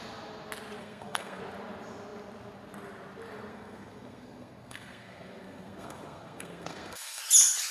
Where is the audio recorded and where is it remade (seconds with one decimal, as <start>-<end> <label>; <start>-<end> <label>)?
0.0-0.8 recorded; 0.8-1.4 remade; 1.4-3.5 recorded; 3.5-7.2 remade; 7.2-7.7 recorded